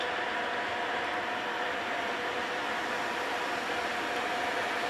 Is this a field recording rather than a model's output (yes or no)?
yes